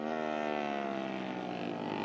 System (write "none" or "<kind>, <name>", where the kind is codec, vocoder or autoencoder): none